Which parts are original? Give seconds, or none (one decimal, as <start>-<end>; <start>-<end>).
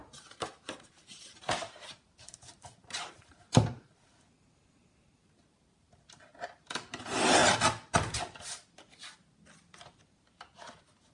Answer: 7.4-10.6